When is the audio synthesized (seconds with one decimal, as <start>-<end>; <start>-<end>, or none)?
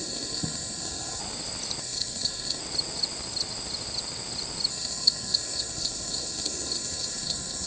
0.0-1.2; 1.8-2.6; 4.7-7.7